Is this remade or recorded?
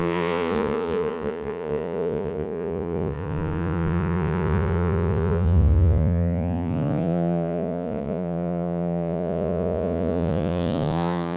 remade